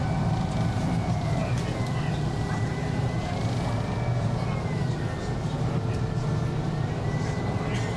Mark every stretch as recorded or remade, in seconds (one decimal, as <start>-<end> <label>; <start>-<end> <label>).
0.0-2.7 recorded; 2.7-3.2 remade; 3.2-8.0 recorded

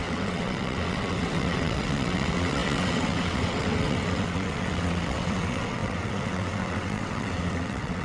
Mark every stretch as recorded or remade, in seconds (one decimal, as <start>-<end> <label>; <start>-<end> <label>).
0.0-8.0 remade

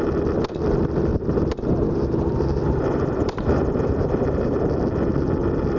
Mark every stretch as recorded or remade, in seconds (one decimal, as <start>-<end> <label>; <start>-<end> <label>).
0.0-1.1 recorded; 1.1-4.6 remade; 4.6-5.8 recorded

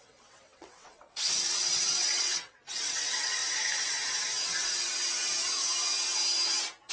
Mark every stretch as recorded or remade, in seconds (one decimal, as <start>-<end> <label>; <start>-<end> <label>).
0.0-3.4 remade; 3.4-6.9 recorded

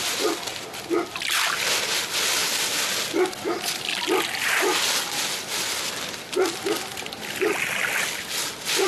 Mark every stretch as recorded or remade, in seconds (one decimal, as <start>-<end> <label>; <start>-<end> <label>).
0.0-0.5 recorded; 0.5-1.2 remade; 1.2-8.9 recorded

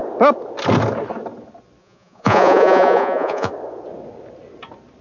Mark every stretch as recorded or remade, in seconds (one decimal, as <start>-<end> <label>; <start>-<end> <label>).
0.0-1.8 recorded; 1.8-3.5 remade; 3.5-5.0 recorded